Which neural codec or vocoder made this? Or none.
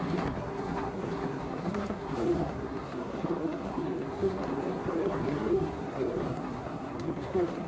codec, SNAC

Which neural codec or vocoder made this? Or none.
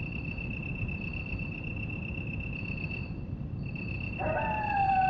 vocoder, BigVGAN v2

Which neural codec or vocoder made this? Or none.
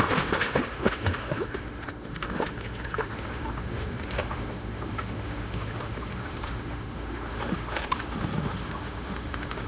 autoencoder, DAC-VAE